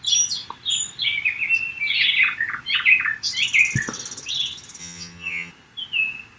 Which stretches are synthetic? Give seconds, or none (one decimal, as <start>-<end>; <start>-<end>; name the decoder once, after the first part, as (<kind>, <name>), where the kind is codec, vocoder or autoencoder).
4.8-5.5 (vocoder, HiFi-GAN)